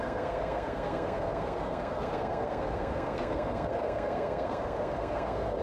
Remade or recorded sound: remade